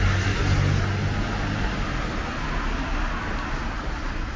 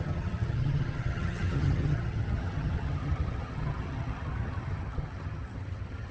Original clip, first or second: first